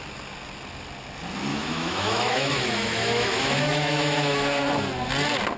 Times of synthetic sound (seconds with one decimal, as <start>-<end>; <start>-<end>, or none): 1.5-4.6